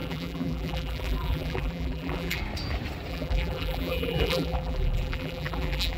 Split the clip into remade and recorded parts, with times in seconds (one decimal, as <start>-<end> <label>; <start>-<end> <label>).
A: 0.0-2.4 remade; 2.4-3.1 recorded; 3.1-6.0 remade